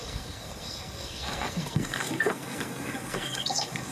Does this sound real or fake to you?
fake